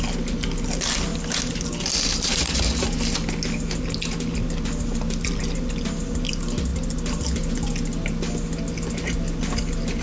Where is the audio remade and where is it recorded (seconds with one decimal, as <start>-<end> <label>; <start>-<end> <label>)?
0.0-10.0 recorded